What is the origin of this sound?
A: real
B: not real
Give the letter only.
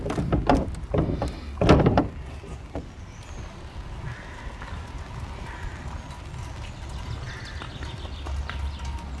A